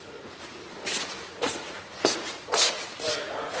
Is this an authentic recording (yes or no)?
no